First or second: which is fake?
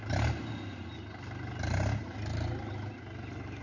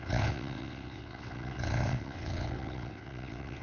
second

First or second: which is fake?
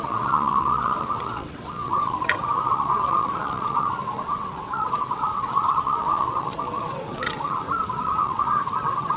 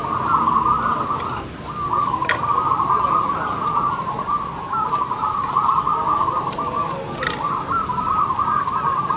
first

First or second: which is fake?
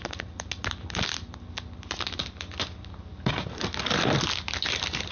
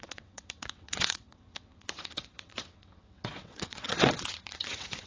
second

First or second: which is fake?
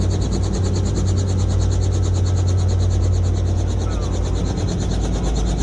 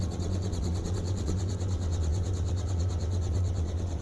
second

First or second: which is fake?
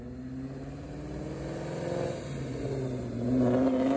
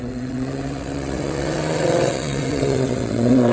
second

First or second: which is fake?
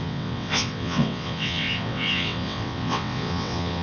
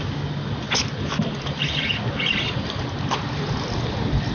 first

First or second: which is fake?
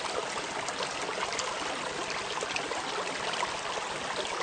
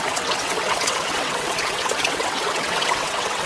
second